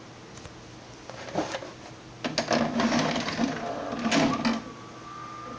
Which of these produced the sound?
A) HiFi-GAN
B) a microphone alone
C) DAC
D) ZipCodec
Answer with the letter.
B